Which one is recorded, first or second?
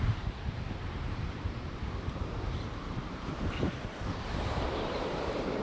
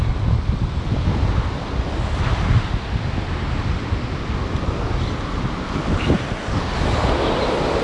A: second